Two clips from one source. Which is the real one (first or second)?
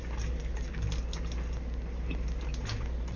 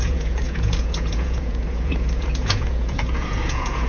first